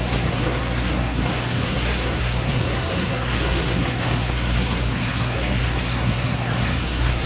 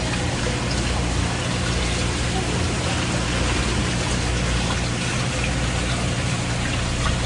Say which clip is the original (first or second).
second